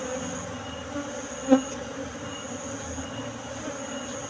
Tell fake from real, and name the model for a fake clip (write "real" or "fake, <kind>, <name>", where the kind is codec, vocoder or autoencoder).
real